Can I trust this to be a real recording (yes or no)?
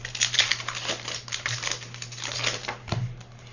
yes